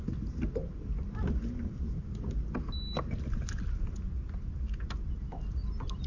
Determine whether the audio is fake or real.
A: real